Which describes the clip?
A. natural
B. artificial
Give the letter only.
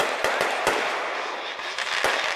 A